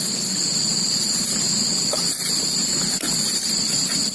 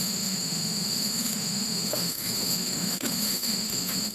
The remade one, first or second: second